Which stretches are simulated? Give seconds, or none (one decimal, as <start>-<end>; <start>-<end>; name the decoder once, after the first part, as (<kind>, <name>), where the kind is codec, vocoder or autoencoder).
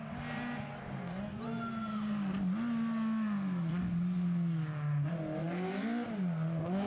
0.8-1.4 (codec, DAC)